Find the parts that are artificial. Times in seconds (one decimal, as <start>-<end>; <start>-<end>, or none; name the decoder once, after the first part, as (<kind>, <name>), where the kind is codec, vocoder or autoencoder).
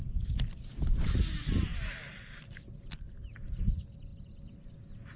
none